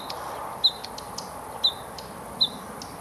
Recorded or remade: recorded